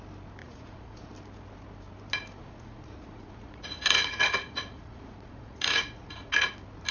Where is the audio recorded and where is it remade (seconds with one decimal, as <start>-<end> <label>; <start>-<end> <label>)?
0.0-0.4 recorded; 0.4-1.1 remade; 1.1-2.4 recorded; 2.4-6.5 remade; 6.5-6.9 recorded